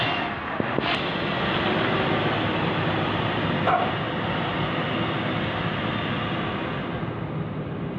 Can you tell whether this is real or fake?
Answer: real